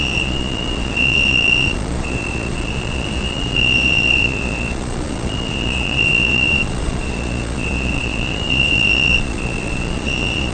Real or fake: fake